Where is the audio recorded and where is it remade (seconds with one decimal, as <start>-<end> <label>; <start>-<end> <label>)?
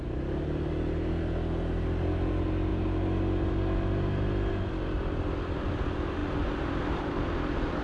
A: 0.0-6.2 recorded; 6.2-7.1 remade; 7.1-7.8 recorded